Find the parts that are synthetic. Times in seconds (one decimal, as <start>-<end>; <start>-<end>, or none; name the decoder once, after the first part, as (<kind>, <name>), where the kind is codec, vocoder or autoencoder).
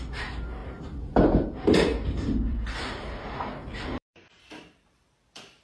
0.0-5.6 (vocoder, BigVGAN v2)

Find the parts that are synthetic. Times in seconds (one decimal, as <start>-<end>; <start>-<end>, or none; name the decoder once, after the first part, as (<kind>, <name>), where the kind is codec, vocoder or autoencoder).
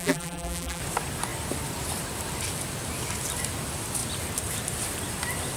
0.0-0.8 (vocoder, BigVGAN v2)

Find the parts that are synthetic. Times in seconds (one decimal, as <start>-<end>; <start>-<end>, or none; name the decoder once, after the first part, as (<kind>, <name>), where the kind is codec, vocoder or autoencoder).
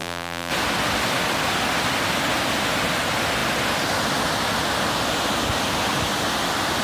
0.0-0.5 (vocoder, BigVGAN v2)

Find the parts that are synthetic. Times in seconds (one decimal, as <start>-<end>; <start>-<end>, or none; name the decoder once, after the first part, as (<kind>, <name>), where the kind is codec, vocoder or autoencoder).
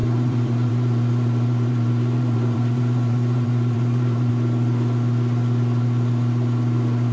0.0-4.3 (vocoder, BigVGAN v2)